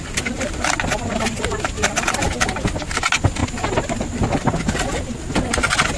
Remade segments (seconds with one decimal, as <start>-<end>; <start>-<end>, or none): none